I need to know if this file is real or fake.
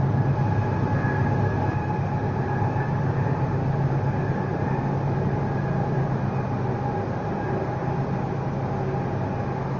real